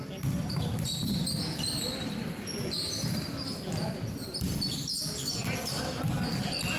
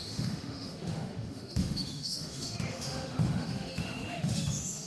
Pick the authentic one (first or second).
first